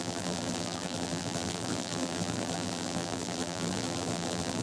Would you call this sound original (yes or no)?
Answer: no